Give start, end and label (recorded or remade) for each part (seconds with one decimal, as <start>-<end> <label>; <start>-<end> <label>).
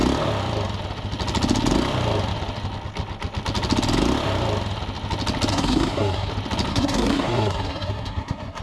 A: 0.0-5.5 recorded; 5.5-6.3 remade; 6.3-6.7 recorded; 6.7-8.6 remade